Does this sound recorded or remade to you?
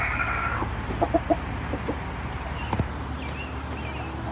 recorded